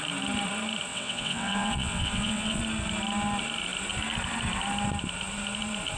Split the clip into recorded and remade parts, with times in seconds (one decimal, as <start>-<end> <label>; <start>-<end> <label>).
0.0-0.9 recorded; 0.9-2.6 remade; 2.6-6.0 recorded